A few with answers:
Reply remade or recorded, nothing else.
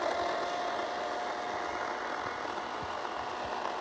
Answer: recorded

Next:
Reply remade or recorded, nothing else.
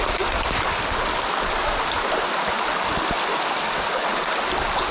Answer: recorded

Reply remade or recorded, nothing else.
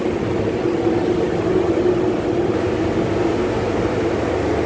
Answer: recorded